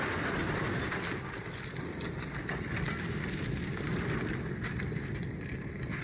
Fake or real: real